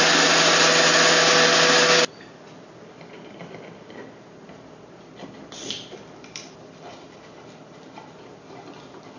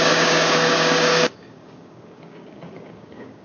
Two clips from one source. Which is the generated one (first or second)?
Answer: second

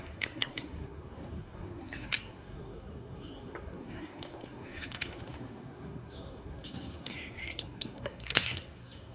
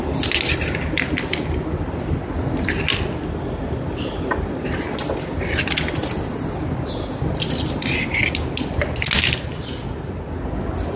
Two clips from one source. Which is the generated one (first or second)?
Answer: first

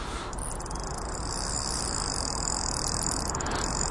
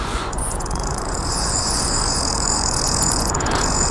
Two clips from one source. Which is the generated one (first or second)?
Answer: second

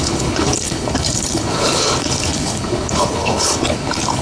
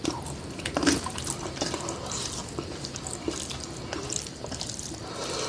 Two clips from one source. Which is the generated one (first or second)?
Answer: first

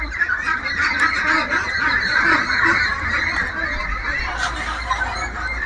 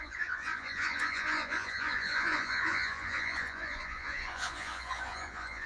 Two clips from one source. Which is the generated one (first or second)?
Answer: second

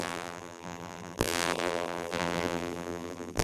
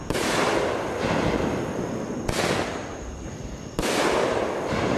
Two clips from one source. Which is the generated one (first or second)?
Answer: first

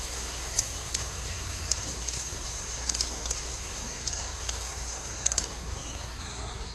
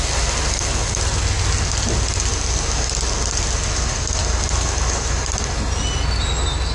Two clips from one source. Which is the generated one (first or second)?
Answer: first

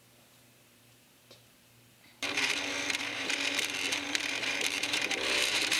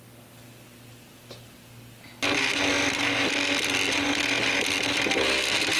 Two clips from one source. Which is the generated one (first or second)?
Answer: first